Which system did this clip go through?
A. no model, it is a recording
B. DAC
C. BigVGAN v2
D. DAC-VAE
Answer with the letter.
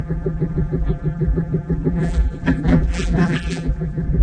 C